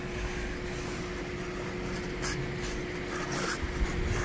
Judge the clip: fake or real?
real